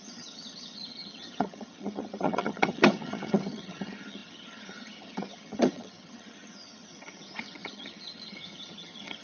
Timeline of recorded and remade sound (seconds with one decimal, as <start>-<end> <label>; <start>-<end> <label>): 0.0-9.2 remade